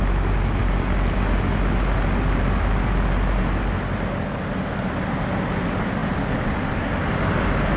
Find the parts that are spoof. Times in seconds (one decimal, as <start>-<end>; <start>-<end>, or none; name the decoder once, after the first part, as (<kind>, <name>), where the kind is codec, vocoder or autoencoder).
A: none